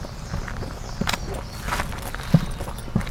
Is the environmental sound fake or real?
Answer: fake